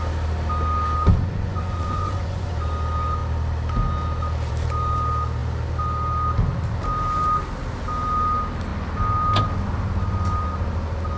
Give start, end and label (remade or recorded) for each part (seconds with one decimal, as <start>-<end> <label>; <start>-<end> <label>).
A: 0.0-1.1 recorded; 1.1-2.5 remade; 2.5-11.2 recorded